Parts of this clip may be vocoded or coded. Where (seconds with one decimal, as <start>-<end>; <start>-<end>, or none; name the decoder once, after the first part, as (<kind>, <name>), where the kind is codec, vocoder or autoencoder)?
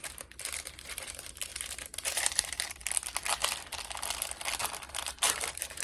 0.0-2.8 (vocoder, BigVGAN v2); 4.9-5.8